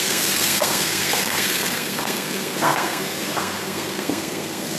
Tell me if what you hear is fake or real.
fake